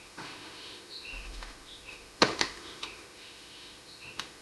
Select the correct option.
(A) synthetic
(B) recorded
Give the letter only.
A